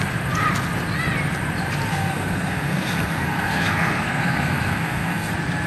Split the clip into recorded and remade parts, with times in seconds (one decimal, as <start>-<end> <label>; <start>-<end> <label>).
0.0-1.9 recorded; 1.9-5.3 remade; 5.3-5.7 recorded